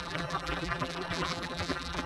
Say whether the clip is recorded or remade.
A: remade